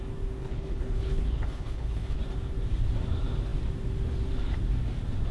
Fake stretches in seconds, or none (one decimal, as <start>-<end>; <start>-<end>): 0.4-2.2